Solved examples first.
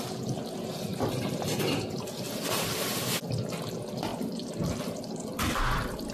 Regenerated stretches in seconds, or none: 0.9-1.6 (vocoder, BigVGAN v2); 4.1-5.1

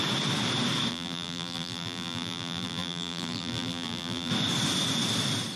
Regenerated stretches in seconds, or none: 0.9-4.3 (vocoder, BigVGAN v2)

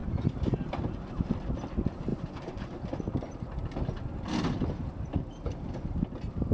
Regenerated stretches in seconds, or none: 0.0-1.3 (vocoder, BigVGAN v2); 2.1-3.0

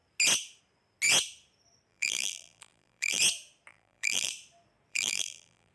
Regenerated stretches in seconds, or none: 1.9-3.2 (vocoder, BigVGAN v2); 3.7-4.3; 4.9-5.7

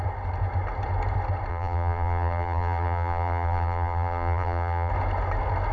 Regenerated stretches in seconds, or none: 1.5-4.9 (vocoder, BigVGAN v2)

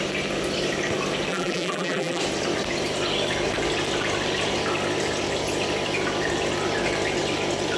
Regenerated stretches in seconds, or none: 1.3-2.2 (vocoder, BigVGAN v2)

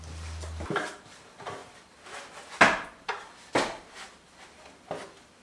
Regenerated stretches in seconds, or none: none

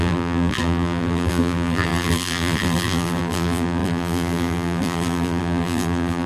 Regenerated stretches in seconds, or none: 0.0-6.3 (vocoder, BigVGAN v2)